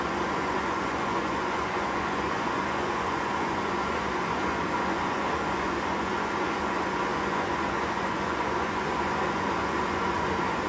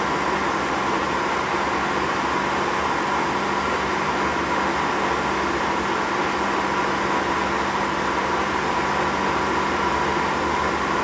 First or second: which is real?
second